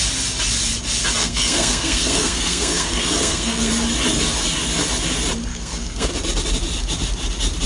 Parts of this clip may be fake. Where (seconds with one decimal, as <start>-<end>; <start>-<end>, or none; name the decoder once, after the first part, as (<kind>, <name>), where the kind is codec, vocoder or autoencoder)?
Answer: 1.2-3.7 (codec, SNAC); 5.5-6.1